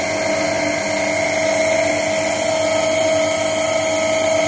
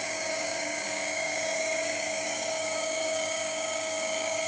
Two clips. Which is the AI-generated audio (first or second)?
second